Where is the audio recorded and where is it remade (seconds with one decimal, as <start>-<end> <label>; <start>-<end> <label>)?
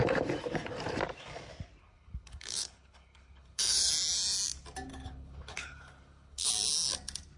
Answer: 0.0-1.8 recorded; 1.8-3.9 remade; 3.9-4.9 recorded; 4.9-6.5 remade; 6.5-7.4 recorded